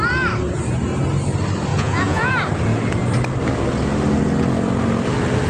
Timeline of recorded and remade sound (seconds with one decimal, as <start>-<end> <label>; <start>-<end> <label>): 0.0-1.7 recorded; 1.7-2.3 remade; 2.3-5.5 recorded